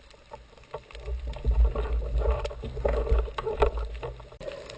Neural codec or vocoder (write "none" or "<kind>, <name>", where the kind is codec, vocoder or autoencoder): none